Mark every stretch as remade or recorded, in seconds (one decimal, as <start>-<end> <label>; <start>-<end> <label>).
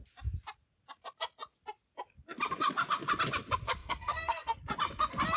0.0-3.8 recorded; 3.8-4.6 remade; 4.6-5.4 recorded